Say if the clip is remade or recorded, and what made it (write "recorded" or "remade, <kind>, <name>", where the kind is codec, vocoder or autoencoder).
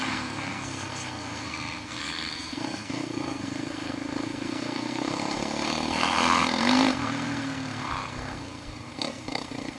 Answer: remade, codec, SNAC